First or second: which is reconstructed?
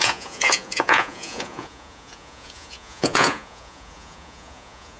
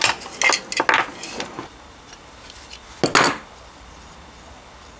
first